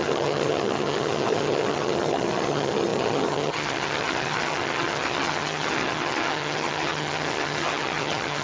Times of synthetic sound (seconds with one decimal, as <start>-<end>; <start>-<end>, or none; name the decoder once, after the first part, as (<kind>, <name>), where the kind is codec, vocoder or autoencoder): 0.0-8.4 (vocoder, HiFi-GAN)